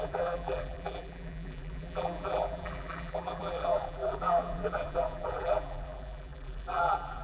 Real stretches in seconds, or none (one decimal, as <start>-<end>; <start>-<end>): none